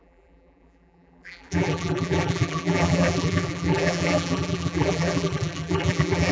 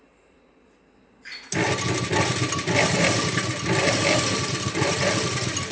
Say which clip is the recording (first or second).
second